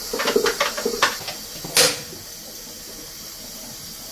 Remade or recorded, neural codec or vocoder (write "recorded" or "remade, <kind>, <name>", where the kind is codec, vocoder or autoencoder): recorded